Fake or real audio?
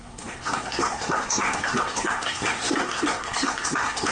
fake